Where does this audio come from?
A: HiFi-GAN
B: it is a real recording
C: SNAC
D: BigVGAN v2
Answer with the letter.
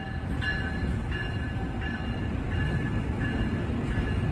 B